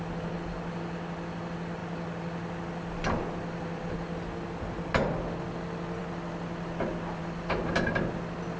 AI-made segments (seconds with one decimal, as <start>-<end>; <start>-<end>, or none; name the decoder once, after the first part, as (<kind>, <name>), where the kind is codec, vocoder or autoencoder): none